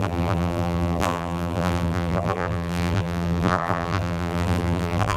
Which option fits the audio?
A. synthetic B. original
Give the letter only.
A